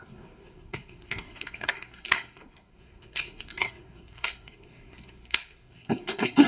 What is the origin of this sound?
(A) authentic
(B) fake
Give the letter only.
B